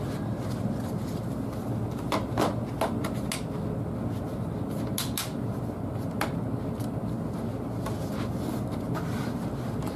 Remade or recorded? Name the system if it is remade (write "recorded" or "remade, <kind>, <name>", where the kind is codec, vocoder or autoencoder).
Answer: recorded